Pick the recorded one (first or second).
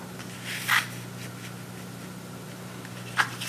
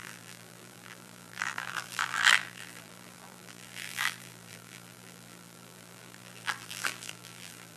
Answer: first